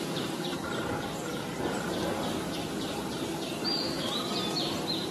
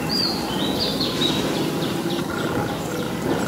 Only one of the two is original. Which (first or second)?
second